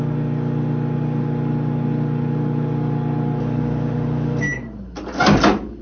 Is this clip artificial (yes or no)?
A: no